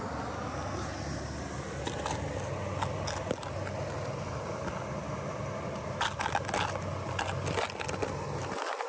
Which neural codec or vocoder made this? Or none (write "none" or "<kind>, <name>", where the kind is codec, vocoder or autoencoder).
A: none